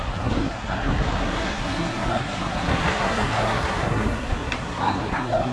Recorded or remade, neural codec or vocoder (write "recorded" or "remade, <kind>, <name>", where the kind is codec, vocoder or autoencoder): remade, codec, SNAC